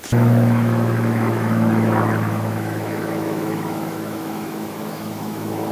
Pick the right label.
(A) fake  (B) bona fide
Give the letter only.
A